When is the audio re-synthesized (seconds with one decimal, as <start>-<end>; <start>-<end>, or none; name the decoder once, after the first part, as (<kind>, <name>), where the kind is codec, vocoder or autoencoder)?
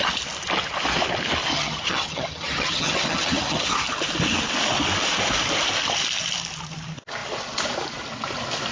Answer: 1.5-3.7 (vocoder, HiFi-GAN)